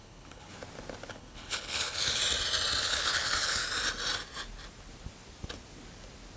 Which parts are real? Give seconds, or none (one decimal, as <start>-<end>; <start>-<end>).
0.5-1.1; 2.2-2.8; 3.6-6.4